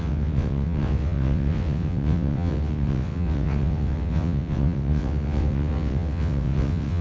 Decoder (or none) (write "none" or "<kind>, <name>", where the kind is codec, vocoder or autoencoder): vocoder, WaveNeXt